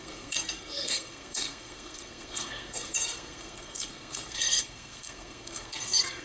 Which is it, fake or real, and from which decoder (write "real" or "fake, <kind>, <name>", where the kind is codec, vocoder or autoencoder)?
fake, codec, SNAC